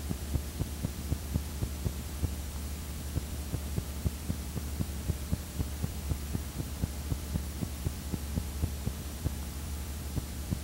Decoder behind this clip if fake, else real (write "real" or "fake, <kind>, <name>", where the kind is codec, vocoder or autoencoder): fake, vocoder, BigVGAN v2